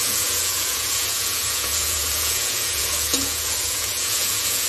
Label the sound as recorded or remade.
remade